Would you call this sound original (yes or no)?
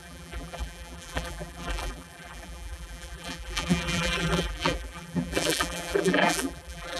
no